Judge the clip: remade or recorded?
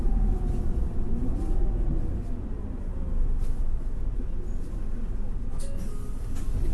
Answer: recorded